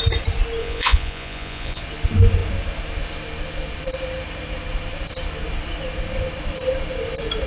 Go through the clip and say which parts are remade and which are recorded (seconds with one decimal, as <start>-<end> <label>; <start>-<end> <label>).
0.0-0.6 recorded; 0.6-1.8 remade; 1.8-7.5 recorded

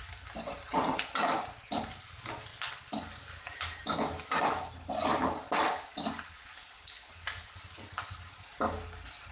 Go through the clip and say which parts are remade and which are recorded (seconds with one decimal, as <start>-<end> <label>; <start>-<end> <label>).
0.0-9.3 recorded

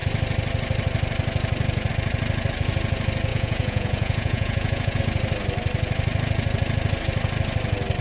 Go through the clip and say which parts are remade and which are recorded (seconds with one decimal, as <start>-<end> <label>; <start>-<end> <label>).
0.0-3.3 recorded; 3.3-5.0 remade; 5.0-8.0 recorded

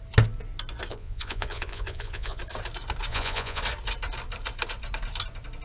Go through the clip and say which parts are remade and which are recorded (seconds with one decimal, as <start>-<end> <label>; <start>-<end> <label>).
0.0-0.9 recorded; 0.9-2.4 remade; 2.4-3.1 recorded; 3.1-3.6 remade; 3.6-5.6 recorded

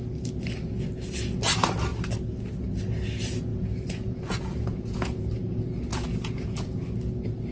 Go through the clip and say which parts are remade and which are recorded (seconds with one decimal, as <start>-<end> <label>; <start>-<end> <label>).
0.0-3.5 recorded; 3.5-5.3 remade; 5.3-5.9 recorded; 5.9-6.8 remade; 6.8-7.5 recorded